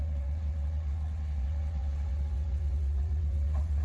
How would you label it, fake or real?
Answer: fake